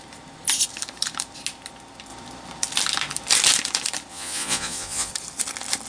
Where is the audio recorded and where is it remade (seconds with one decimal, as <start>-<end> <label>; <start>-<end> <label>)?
0.0-4.1 recorded; 4.1-5.1 remade; 5.1-5.9 recorded